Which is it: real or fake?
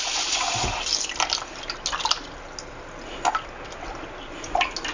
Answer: real